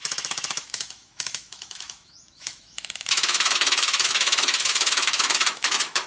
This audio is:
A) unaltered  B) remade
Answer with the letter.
B